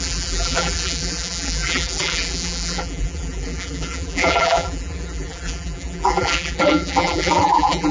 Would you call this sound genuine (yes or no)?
no